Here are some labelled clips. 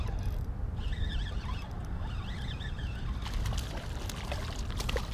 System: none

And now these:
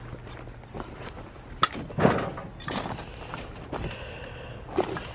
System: none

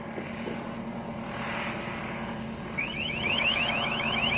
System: vocoder, BigVGAN v2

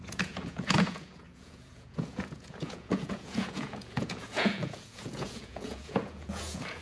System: vocoder, Vocos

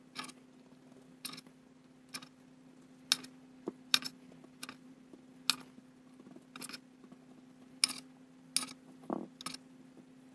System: none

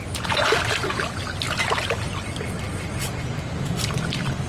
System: none